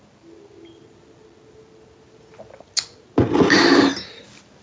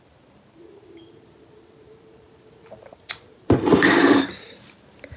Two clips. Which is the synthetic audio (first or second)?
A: second